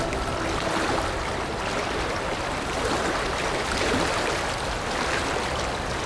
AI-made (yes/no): no